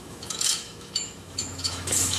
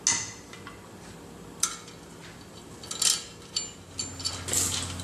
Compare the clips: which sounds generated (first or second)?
first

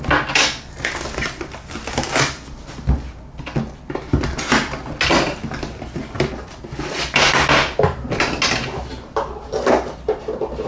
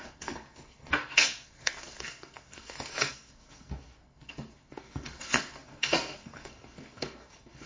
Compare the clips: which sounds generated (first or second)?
second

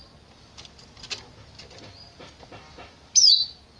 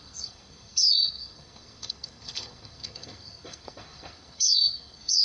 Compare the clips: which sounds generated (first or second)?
second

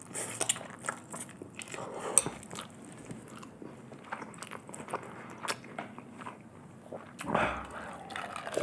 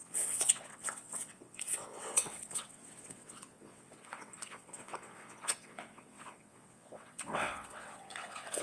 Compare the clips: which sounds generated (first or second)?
second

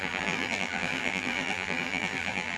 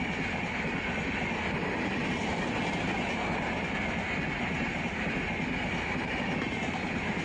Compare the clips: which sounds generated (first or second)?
first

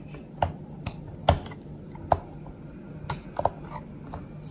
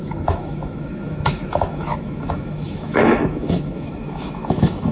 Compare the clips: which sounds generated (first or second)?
second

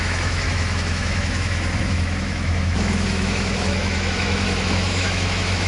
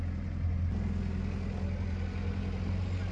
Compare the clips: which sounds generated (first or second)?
first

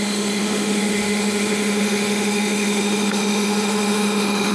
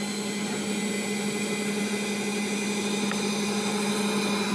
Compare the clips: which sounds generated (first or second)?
first